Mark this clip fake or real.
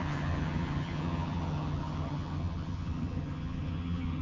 fake